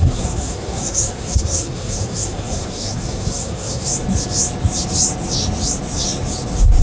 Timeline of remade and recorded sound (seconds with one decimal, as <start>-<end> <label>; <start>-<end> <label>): 0.0-3.9 remade; 3.9-6.8 recorded

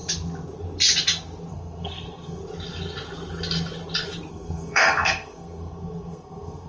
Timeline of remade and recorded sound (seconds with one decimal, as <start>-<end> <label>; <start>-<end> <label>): 0.0-1.5 recorded; 1.5-2.4 remade; 2.4-4.3 recorded; 4.3-6.7 remade

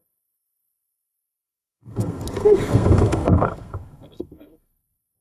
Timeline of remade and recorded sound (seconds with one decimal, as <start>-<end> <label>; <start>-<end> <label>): 0.0-5.2 remade